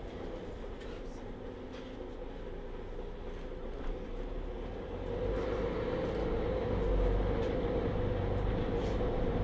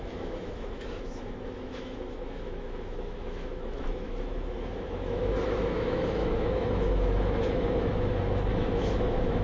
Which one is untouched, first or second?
first